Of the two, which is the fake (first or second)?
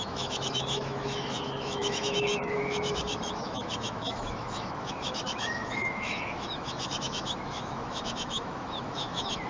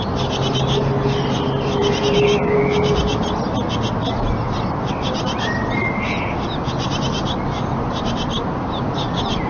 first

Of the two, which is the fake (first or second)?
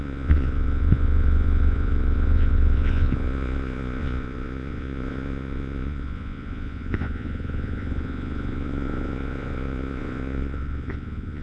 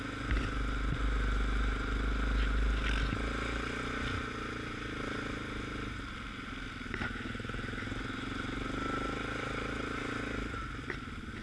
first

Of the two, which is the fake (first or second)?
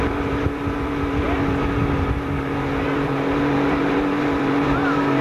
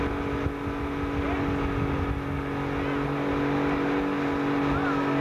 first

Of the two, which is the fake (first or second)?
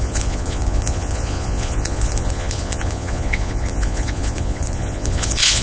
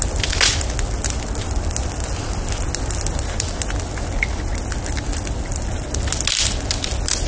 first